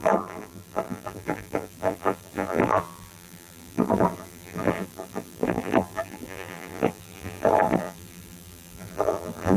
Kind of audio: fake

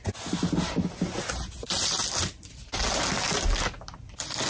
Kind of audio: real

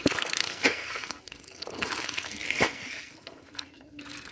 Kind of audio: fake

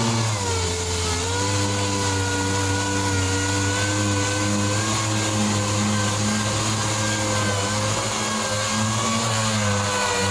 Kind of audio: real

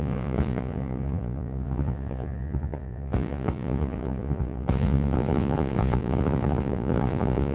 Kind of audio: fake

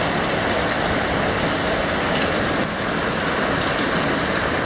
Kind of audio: real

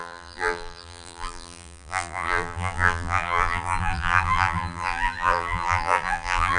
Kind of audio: fake